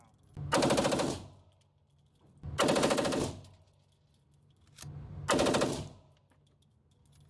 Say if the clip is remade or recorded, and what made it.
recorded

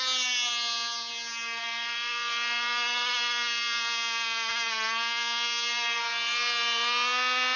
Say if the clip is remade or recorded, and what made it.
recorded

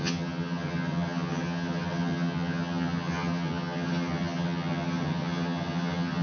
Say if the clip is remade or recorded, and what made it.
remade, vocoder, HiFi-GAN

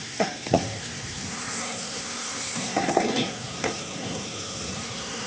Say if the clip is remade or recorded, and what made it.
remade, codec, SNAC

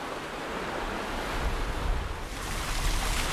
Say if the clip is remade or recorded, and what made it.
recorded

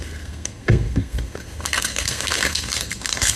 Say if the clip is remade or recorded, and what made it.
remade, codec, SNAC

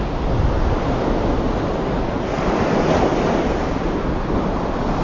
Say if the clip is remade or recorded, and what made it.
recorded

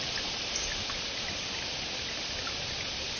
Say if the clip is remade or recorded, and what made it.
recorded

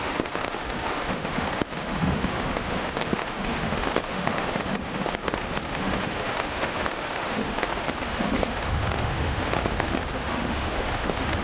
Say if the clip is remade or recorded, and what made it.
remade, autoencoder, DAC-VAE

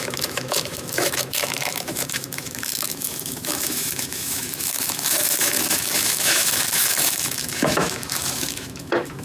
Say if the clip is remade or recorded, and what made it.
remade, autoencoder, DAC-VAE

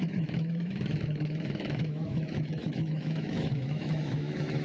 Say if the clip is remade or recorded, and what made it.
remade, autoencoder, DAC-VAE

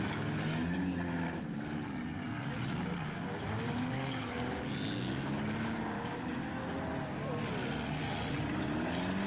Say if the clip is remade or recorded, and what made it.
recorded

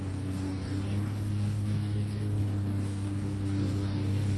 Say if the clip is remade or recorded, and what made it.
remade, codec, DAC